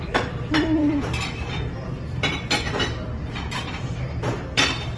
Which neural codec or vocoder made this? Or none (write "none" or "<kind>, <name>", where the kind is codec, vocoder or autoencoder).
vocoder, BigVGAN v2